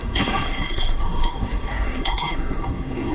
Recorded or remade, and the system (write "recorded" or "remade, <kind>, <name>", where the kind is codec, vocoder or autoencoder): remade, codec, SNAC